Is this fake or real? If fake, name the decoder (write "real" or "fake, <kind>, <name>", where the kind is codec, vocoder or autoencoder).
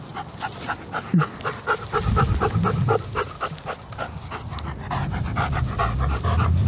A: real